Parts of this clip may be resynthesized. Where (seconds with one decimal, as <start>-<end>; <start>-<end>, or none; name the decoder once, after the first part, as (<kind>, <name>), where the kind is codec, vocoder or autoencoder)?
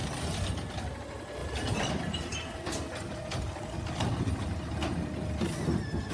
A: 1.0-6.1 (vocoder, BigVGAN v2)